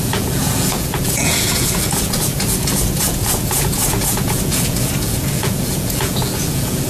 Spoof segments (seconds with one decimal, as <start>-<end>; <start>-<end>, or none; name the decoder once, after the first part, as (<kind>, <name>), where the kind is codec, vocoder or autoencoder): 0.0-6.9 (vocoder, Vocos)